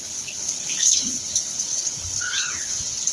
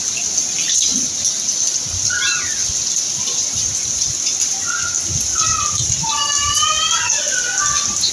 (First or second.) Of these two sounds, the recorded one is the second